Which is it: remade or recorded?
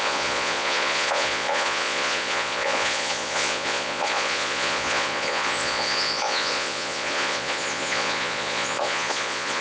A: remade